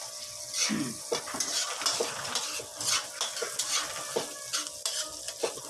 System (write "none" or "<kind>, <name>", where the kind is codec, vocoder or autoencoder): none